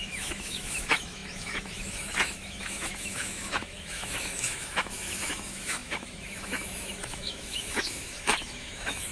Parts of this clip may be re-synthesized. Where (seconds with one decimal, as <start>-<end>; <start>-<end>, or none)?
0.0-9.1